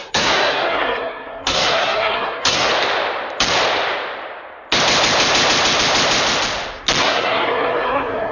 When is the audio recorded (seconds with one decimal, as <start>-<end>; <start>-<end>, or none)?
2.7-7.0